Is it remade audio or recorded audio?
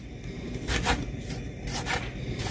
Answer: recorded